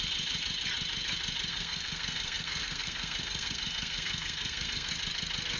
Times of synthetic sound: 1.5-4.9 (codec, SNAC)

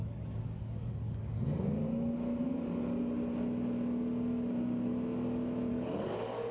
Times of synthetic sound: 0.0-1.8 (codec, DAC); 5.7-6.5

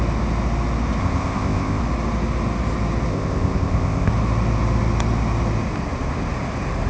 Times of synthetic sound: 1.0-1.8 (codec, ZipCodec); 3.1-4.1

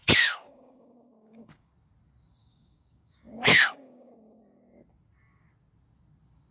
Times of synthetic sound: 0.0-1.7 (codec, DAC); 2.4-4.1

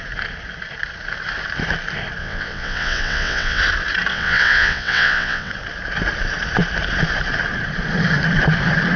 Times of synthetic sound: 2.2-3.6 (vocoder, WaveNeXt); 4.1-5.5